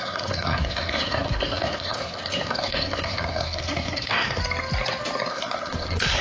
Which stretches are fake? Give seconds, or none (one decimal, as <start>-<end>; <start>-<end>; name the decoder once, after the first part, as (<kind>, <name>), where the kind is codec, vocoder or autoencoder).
0.0-4.4 (codec, SNAC); 5.3-6.2